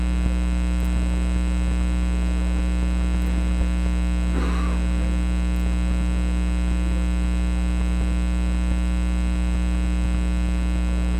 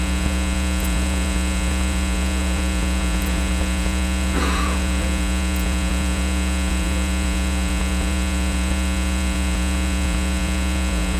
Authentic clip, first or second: first